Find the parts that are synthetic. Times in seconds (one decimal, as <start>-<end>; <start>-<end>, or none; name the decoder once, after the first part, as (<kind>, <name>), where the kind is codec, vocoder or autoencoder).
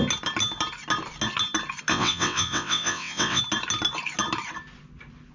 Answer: 1.9-3.4 (vocoder, WaveNeXt)